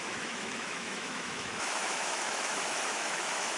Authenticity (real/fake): fake